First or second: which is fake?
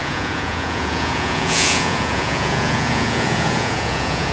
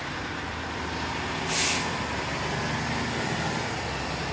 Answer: first